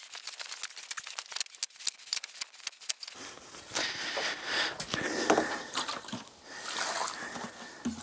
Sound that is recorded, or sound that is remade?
recorded